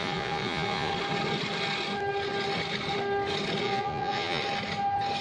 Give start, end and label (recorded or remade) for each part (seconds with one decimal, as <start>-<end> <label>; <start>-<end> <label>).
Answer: 0.0-0.9 remade; 0.9-3.6 recorded; 3.6-4.4 remade; 4.4-5.2 recorded